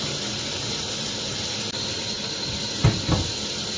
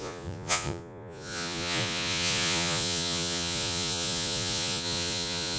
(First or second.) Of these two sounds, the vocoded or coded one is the second